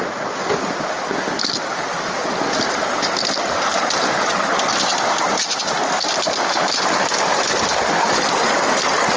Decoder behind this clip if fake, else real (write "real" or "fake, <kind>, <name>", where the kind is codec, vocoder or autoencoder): real